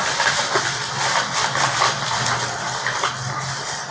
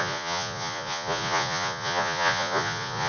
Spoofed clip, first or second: second